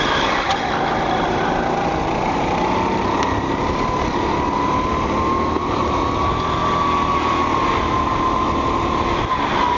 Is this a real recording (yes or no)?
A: yes